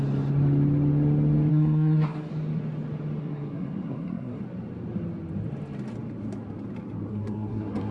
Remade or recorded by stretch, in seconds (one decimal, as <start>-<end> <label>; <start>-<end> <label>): 0.0-1.5 recorded; 1.5-2.3 remade; 2.3-3.2 recorded; 3.2-4.4 remade; 4.4-7.1 recorded; 7.1-7.9 remade